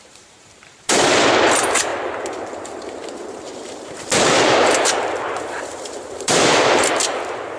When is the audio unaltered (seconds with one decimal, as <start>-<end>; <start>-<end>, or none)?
none